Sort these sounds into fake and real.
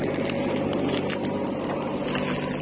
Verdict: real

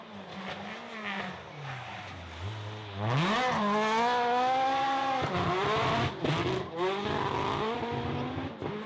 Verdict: real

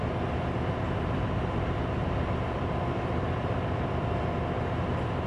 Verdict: fake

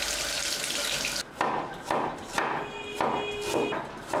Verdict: real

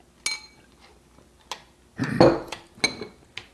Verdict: real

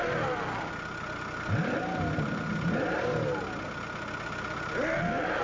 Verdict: real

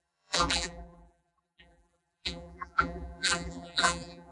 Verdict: fake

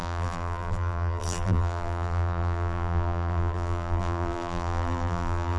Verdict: fake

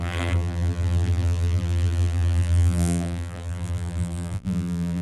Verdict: fake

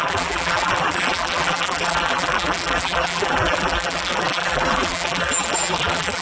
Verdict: fake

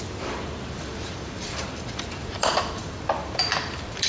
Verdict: fake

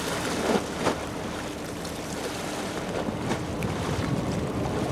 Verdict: real